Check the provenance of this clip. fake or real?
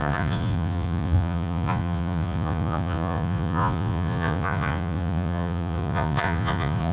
fake